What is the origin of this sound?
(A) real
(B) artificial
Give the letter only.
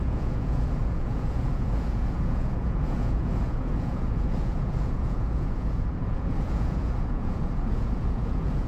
B